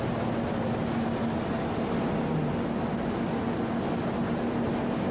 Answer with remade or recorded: recorded